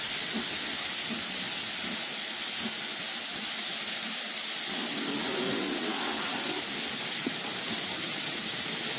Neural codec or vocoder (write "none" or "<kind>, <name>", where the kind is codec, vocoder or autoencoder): none